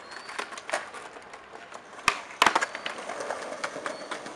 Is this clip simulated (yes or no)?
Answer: no